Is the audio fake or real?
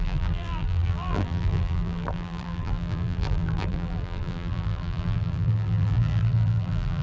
fake